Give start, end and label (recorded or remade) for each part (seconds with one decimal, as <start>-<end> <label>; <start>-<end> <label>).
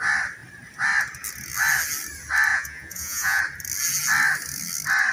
0.0-2.5 recorded; 2.5-3.4 remade; 3.4-5.1 recorded